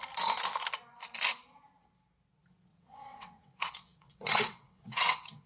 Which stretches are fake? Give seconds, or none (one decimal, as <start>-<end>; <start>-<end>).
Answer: 2.7-5.5